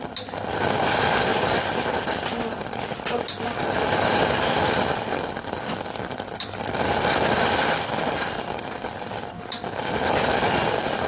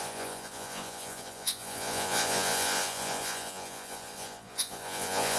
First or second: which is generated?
second